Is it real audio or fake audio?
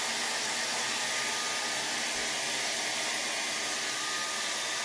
real